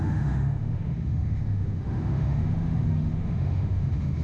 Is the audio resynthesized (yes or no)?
yes